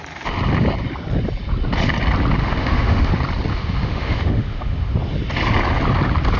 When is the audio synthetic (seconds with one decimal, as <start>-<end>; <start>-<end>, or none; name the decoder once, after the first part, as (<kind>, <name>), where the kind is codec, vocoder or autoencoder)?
2.4-3.1 (autoencoder, DAC-VAE); 3.5-4.9